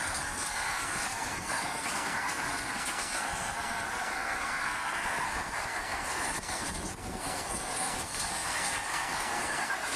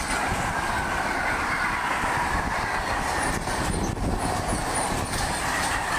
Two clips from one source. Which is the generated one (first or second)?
first